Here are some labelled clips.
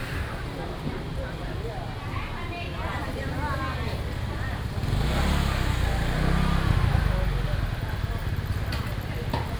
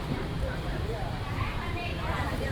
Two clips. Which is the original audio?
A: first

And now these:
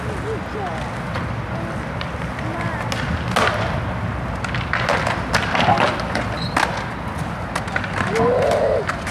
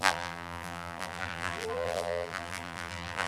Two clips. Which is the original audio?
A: first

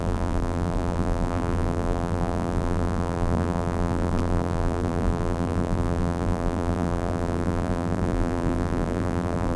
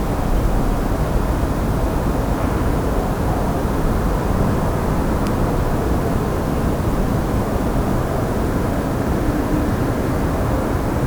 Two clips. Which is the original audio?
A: second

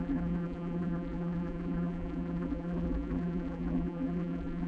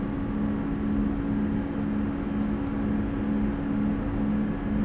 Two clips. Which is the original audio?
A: second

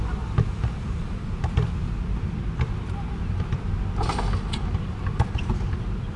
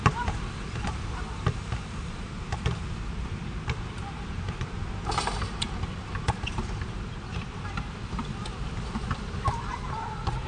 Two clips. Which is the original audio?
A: first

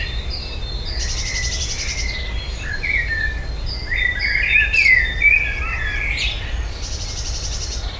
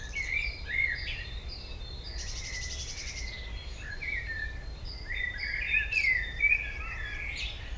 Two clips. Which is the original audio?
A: first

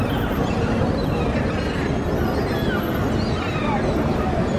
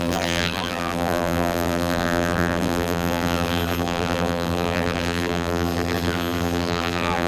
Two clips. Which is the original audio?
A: first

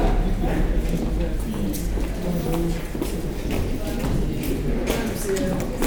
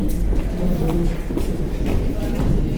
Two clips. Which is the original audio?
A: first